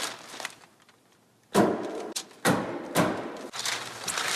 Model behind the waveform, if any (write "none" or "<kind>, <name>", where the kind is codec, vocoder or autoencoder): none